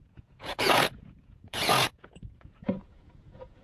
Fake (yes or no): yes